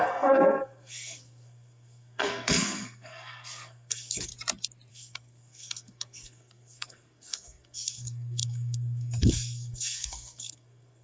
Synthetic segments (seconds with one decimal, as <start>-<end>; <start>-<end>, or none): 0.0-4.3; 4.9-11.0